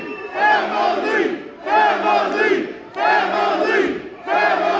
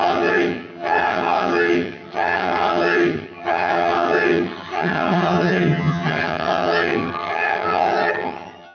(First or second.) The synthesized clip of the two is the second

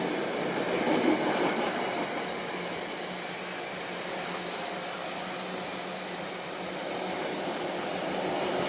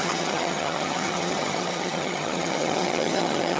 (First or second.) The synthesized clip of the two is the second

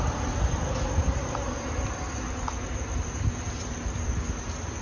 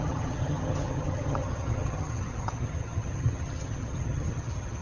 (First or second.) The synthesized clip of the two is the second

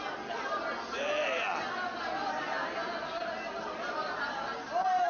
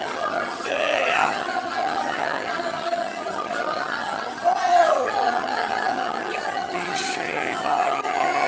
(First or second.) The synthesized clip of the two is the second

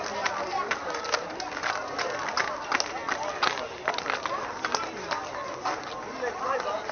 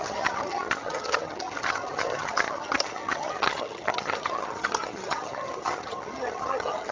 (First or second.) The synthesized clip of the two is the second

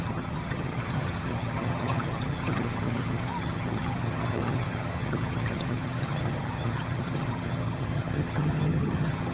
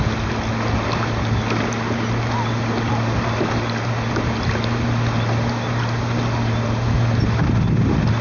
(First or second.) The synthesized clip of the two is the first